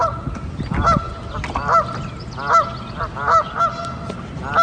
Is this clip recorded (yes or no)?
yes